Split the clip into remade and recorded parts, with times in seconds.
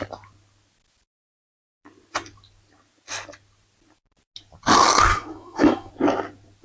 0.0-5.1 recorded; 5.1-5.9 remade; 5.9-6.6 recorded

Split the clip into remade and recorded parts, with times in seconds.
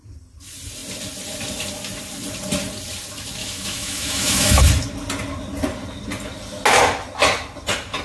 0.0-3.4 recorded; 3.4-4.6 remade; 4.6-8.0 recorded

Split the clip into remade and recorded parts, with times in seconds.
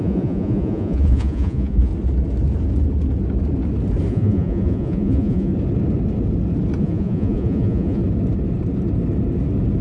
0.0-1.9 remade; 1.9-4.1 recorded; 4.1-5.5 remade; 5.5-6.8 recorded; 6.8-8.0 remade; 8.0-9.8 recorded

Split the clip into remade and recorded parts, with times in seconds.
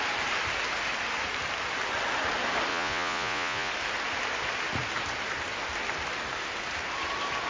0.0-2.7 recorded; 2.7-3.7 remade; 3.7-7.5 recorded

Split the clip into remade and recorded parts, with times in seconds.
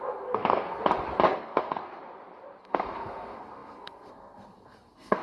0.0-0.8 remade; 0.8-1.4 recorded; 1.4-2.0 remade; 2.0-2.6 recorded; 2.6-5.2 remade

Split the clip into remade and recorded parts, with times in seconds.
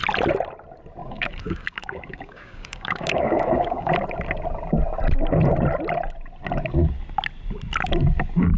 0.0-1.0 recorded; 1.0-3.9 remade; 3.9-8.6 recorded